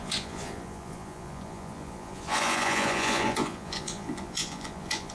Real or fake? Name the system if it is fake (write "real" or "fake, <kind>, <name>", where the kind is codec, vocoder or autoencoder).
fake, vocoder, Vocos